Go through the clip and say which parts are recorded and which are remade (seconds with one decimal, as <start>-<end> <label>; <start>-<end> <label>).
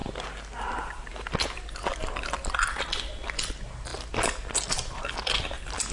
0.0-5.9 recorded